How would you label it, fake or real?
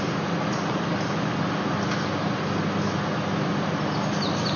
real